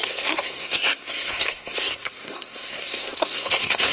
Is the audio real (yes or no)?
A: no